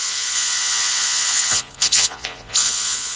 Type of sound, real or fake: fake